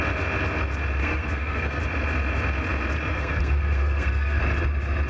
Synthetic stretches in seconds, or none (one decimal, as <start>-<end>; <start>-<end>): 1.0-1.8; 3.1-4.4